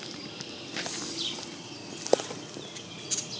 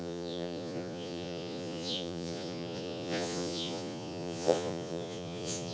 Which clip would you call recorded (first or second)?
first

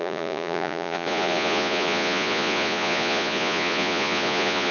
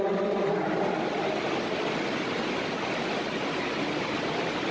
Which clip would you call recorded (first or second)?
second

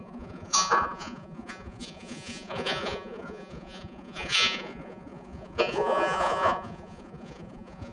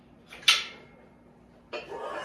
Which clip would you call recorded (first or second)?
second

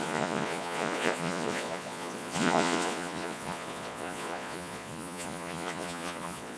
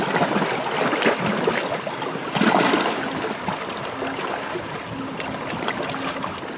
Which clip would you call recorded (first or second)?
second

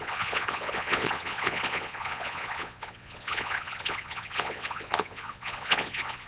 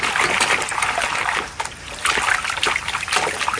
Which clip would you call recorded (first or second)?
second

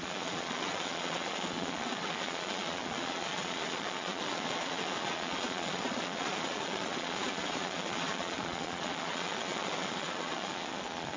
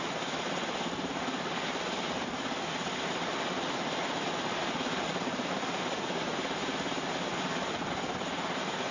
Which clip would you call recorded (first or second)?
second